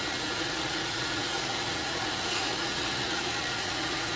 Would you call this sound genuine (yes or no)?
no